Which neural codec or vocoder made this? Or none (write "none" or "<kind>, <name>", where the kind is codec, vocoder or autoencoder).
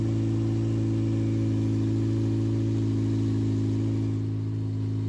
none